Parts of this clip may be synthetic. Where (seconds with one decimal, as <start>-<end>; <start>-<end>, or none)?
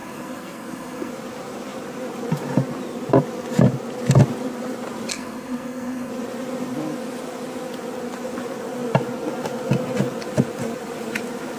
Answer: 0.0-1.1; 5.1-6.1